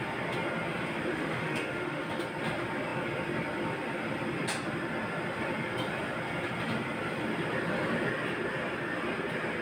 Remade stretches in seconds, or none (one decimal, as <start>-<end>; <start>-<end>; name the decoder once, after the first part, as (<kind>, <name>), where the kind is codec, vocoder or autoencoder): 1.1-2.2 (autoencoder, DAC-VAE)